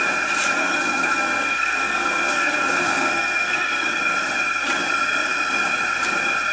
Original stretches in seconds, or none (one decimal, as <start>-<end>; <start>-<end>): 0.0-0.6; 3.9-6.5